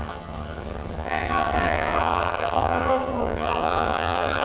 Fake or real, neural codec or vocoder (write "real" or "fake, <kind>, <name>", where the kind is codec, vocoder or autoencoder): fake, vocoder, HiFi-GAN